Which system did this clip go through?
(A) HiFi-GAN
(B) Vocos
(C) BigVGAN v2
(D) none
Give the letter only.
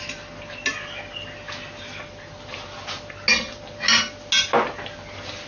D